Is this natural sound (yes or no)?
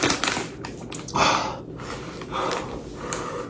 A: yes